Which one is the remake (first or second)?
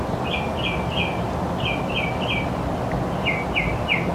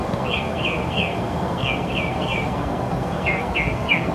second